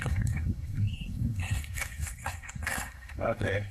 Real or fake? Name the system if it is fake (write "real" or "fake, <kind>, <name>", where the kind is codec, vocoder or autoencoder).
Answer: fake, codec, SNAC